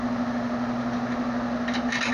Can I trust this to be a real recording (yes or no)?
yes